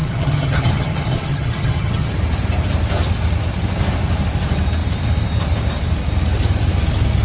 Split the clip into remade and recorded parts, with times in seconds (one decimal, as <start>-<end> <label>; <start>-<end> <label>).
0.0-2.1 remade; 2.1-7.2 recorded